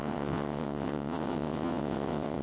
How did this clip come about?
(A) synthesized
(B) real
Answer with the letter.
A